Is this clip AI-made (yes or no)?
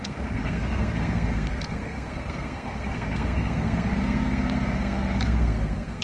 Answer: yes